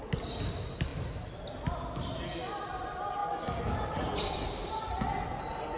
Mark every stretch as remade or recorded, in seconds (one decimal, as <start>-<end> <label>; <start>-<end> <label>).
0.0-3.2 recorded; 3.2-4.7 remade; 4.7-5.8 recorded